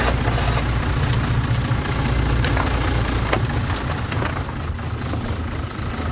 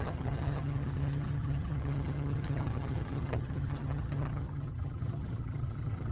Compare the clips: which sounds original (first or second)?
first